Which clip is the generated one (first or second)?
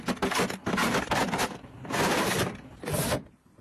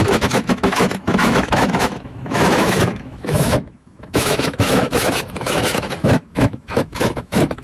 second